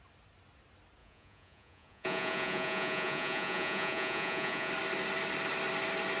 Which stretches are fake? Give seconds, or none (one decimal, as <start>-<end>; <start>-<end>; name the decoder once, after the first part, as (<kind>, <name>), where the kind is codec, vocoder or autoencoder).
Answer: 1.0-4.7 (vocoder, Vocos)